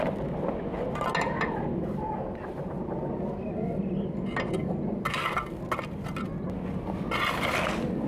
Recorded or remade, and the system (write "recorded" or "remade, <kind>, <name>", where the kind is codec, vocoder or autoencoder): recorded